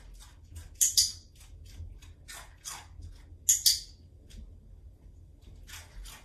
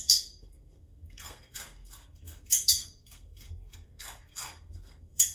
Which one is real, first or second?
first